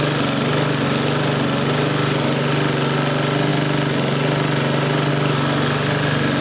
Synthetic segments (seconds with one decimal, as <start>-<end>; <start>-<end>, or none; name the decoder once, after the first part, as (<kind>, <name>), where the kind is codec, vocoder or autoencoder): none